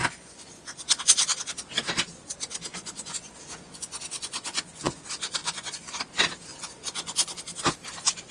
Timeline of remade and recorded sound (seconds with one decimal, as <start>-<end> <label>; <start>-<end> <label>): 0.0-1.0 remade; 1.0-2.7 recorded; 2.7-5.0 remade; 5.0-5.4 recorded; 5.4-6.0 remade; 6.0-6.5 recorded; 6.5-7.4 remade; 7.4-8.3 recorded

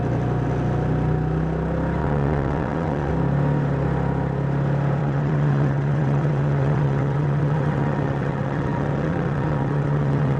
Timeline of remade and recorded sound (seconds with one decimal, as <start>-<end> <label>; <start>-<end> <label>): 0.0-2.0 recorded; 2.0-3.1 remade; 3.1-5.0 recorded; 5.0-10.4 remade

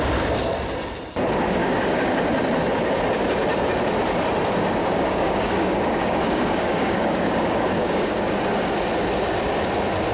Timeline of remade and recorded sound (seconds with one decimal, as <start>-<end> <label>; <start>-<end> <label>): 0.0-1.6 recorded; 1.6-2.2 remade; 2.2-4.8 recorded; 4.8-8.3 remade; 8.3-10.1 recorded

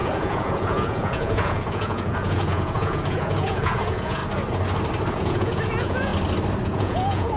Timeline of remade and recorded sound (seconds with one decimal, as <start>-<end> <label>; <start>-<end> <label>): 0.0-4.2 remade; 4.2-5.1 recorded; 5.1-6.1 remade; 6.1-6.6 recorded; 6.6-7.4 remade

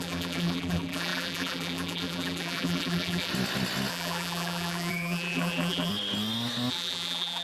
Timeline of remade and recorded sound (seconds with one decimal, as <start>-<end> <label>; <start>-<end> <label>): 0.0-3.3 remade; 3.3-3.9 recorded; 3.9-5.9 remade; 5.9-6.7 recorded; 6.7-7.4 remade

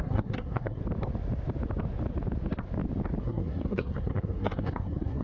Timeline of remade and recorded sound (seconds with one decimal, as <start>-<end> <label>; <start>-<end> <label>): 0.0-0.8 remade; 0.8-3.2 recorded; 3.2-5.2 remade

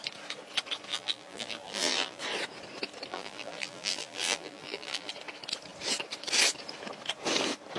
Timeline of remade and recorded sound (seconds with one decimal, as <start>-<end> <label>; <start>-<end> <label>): 0.0-0.9 recorded; 0.9-2.2 remade; 2.2-3.1 recorded; 3.1-5.1 remade; 5.1-7.8 recorded

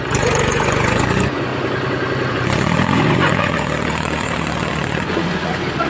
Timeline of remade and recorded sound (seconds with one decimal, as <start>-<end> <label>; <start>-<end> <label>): 0.0-1.5 remade; 1.5-2.3 recorded; 2.3-5.9 remade